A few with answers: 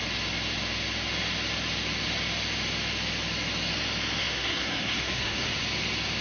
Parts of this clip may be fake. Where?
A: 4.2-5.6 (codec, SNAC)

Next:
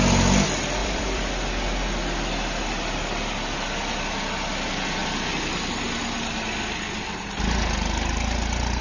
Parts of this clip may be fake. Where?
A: 0.8-1.3 (vocoder, BigVGAN v2)

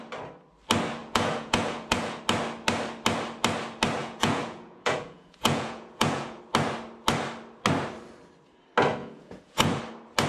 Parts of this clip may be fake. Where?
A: 1.0-2.2 (vocoder, Vocos); 4.0-6.4; 9.0-9.8

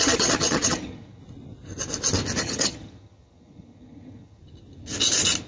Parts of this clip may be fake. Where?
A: 0.0-1.2 (vocoder, HiFi-GAN); 2.4-4.4

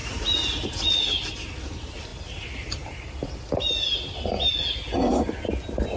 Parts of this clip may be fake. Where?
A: none

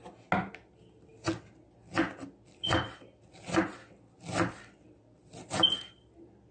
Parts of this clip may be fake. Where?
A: none